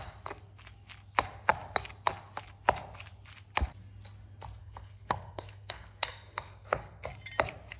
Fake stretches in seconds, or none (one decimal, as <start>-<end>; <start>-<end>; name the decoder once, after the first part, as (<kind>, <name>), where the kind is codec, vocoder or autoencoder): 4.6-7.0 (codec, SNAC)